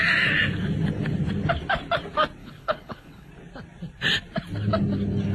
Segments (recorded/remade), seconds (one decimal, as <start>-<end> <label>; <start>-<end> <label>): 0.0-2.4 recorded; 2.4-3.3 remade; 3.3-5.3 recorded